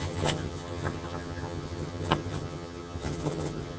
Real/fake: fake